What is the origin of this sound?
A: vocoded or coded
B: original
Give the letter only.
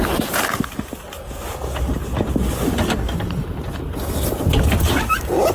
B